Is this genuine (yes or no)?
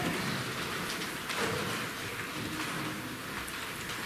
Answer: yes